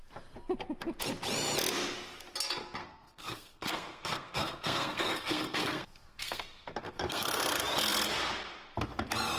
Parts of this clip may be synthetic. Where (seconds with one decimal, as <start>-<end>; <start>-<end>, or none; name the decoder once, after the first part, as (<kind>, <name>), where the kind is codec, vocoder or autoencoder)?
2.8-7.4 (codec, SNAC)